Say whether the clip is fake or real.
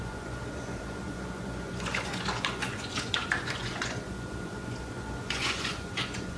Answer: fake